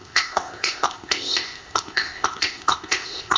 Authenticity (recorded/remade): remade